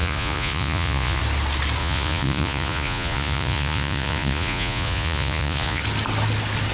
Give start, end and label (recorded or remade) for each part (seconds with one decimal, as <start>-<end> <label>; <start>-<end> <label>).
0.0-1.2 remade; 1.2-1.8 recorded; 1.8-5.8 remade; 5.8-6.7 recorded